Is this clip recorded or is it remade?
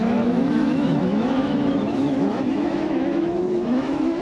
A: remade